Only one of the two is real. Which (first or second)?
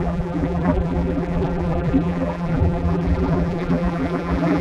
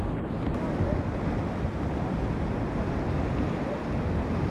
second